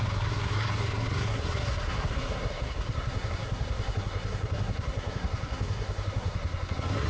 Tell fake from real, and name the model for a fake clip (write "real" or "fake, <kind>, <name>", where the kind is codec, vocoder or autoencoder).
fake, codec, SNAC